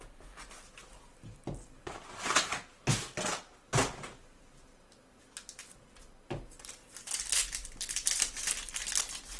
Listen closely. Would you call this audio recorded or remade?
recorded